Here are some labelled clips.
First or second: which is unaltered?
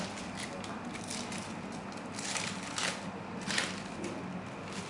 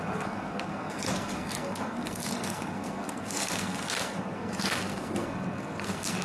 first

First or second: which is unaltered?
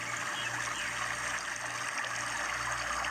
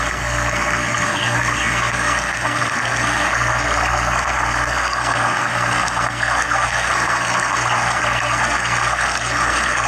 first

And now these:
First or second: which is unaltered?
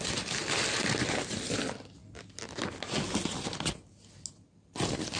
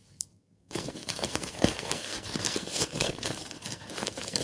first